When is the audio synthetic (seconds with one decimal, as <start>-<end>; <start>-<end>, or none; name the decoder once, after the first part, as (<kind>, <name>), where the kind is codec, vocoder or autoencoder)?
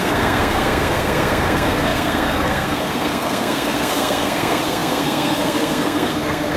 0.0-6.6 (codec, SNAC)